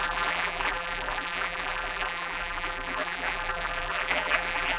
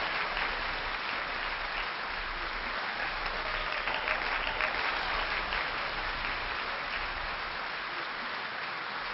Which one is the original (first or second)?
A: second